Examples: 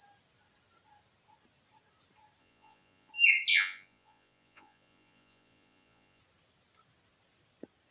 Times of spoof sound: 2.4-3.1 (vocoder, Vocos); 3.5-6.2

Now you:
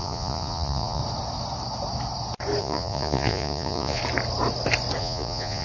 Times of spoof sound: 0.0-1.0 (vocoder, Vocos); 2.6-4.0; 5.0-5.6

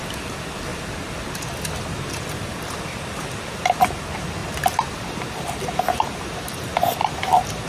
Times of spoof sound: none

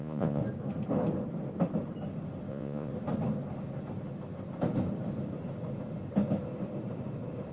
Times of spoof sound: 0.0-0.4 (vocoder, Vocos); 2.5-2.9

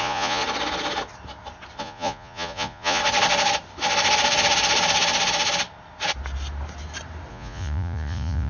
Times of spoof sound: 0.0-0.4 (vocoder, Vocos); 1.8-3.0; 7.3-8.5

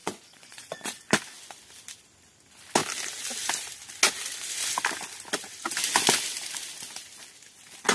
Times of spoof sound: 0.0-1.2 (vocoder, Vocos)